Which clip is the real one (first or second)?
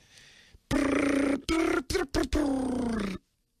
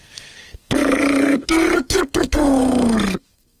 first